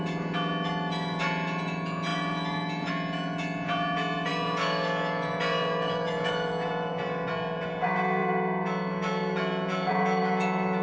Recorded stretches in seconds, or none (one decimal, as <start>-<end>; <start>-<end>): none